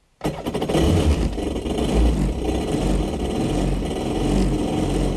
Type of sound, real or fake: real